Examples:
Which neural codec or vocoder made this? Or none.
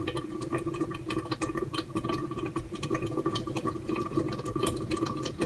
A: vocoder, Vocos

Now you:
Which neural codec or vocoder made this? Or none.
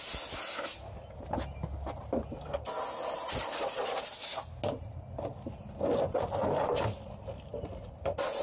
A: none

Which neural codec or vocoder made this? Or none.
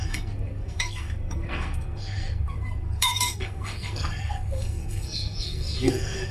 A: codec, SNAC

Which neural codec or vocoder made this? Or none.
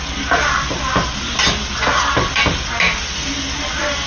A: none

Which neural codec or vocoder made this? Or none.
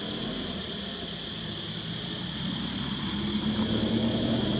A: none